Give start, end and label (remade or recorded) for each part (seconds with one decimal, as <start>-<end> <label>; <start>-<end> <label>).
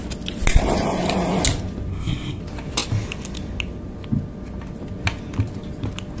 0.0-1.9 recorded; 1.9-2.4 remade; 2.4-6.2 recorded